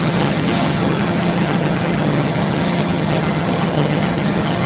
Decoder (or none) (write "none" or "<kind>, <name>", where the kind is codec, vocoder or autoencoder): vocoder, HiFi-GAN